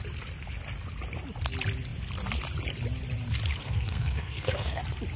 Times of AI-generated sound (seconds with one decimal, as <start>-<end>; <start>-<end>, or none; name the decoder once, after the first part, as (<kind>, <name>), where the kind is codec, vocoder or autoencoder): 3.6-4.8 (codec, SNAC)